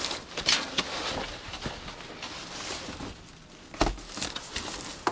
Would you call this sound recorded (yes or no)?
yes